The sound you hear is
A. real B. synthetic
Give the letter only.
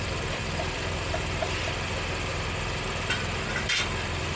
B